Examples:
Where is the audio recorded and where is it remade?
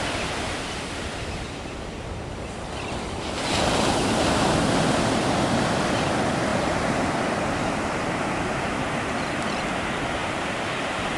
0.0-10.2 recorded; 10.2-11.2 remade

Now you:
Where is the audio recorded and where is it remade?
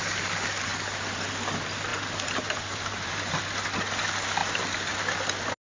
0.0-1.9 recorded; 1.9-3.4 remade; 3.4-4.4 recorded; 4.4-4.9 remade; 4.9-5.7 recorded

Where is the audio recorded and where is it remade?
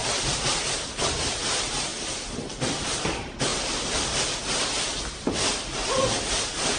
0.0-0.6 remade; 0.6-1.9 recorded; 1.9-2.4 remade; 2.4-3.5 recorded; 3.5-4.4 remade; 4.4-6.8 recorded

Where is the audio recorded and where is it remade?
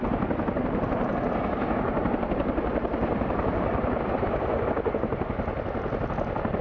0.0-1.1 remade; 1.1-3.0 recorded; 3.0-3.7 remade; 3.7-6.6 recorded